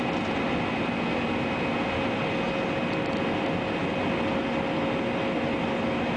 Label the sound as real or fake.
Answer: real